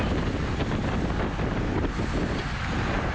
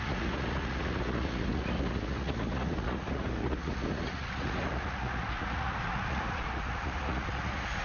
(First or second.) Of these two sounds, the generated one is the second